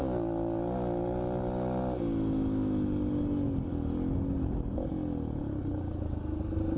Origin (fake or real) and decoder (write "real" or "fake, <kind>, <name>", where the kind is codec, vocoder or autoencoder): real